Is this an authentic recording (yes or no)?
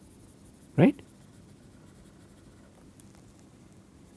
yes